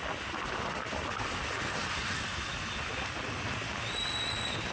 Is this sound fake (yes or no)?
no